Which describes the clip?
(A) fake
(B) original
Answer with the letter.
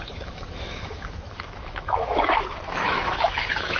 A